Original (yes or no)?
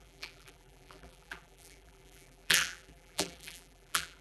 no